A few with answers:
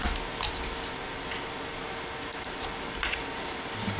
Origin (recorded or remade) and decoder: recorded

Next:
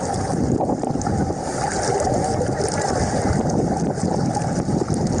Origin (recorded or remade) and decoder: recorded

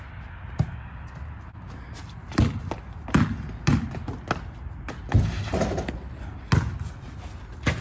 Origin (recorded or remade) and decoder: recorded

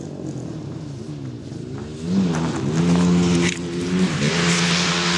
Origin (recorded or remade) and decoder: recorded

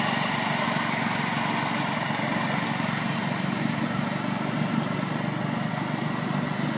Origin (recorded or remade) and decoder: recorded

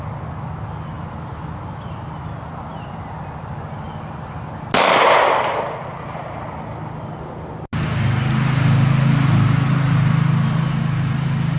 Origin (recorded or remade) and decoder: recorded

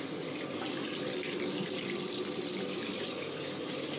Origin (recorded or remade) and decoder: recorded